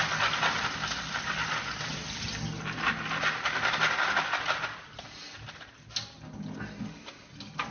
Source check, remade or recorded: recorded